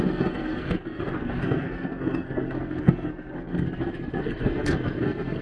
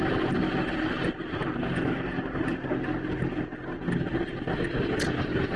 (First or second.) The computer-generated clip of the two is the first